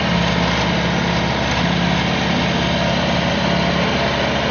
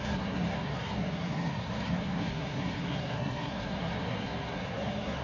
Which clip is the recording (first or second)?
first